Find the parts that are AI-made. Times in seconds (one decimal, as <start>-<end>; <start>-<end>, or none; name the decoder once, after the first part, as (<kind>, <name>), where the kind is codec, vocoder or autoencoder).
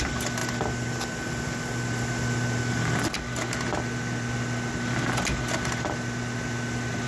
none